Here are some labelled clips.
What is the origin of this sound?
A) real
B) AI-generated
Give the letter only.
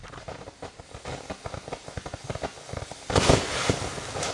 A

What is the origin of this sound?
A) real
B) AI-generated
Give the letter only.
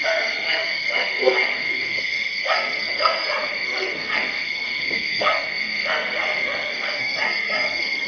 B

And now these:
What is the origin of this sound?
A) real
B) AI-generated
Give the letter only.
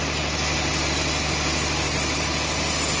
A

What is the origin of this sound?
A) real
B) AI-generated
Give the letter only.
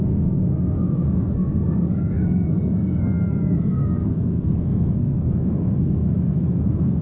B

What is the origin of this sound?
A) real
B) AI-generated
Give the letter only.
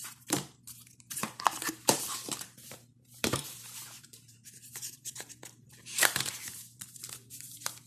B